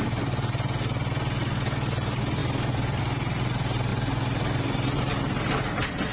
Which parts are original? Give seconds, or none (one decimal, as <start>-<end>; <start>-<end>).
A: 0.0-6.1